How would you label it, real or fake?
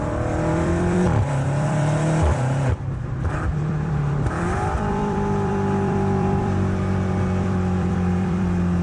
fake